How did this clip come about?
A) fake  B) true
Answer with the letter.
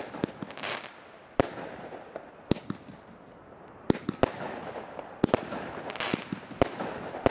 B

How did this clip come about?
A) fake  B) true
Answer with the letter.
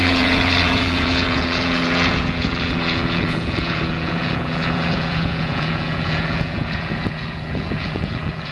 A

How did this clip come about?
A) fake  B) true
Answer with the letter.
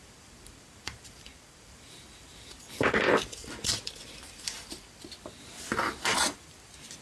A